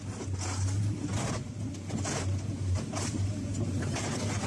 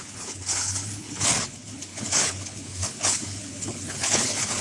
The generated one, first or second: second